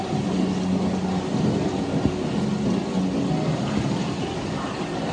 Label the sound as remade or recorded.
recorded